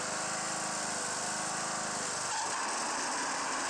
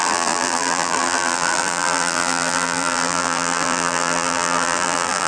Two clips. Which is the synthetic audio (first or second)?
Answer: second